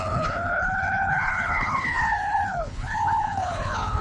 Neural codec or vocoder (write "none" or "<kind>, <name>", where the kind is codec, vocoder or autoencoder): codec, HILCodec